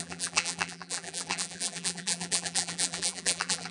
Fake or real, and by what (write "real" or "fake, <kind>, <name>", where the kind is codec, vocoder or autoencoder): fake, vocoder, BigVGAN v2